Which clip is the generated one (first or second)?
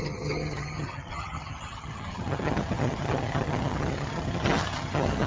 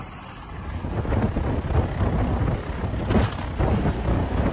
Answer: first